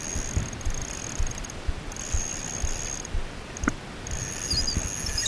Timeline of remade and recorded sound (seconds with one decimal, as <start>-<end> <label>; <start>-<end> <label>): 0.0-5.3 recorded

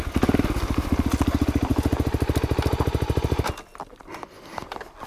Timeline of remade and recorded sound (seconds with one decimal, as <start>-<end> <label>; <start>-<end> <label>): 0.0-5.1 recorded

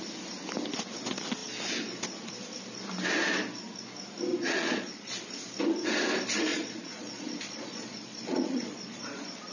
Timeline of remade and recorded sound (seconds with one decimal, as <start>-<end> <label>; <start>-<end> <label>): 0.0-4.3 recorded; 4.3-5.1 remade; 5.1-6.5 recorded; 6.5-9.5 remade

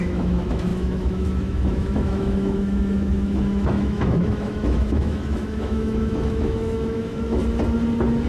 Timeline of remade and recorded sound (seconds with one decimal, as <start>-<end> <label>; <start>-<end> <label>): 0.0-7.4 remade; 7.4-8.3 recorded

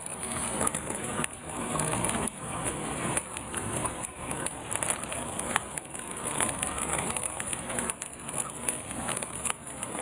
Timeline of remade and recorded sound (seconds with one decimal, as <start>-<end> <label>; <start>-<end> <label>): 0.0-4.6 remade; 4.6-5.1 recorded; 5.1-10.0 remade